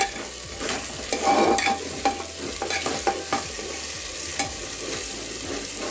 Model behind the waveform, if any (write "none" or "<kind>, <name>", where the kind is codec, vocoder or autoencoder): none